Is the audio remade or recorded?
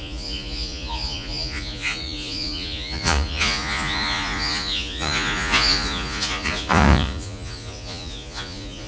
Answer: remade